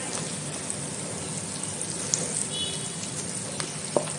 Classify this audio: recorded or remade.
recorded